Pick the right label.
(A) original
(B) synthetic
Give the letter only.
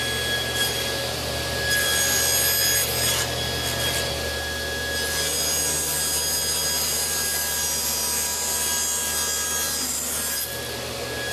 A